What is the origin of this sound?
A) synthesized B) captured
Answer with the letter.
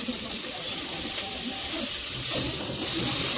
B